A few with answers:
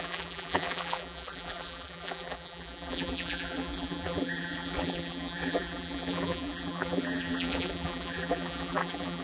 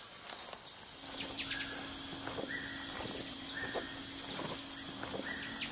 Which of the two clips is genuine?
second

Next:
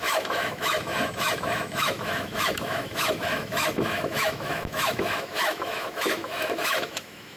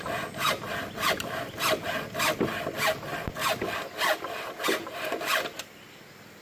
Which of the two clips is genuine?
second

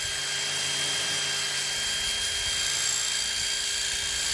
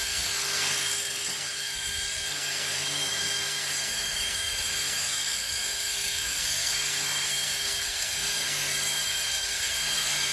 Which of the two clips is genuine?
first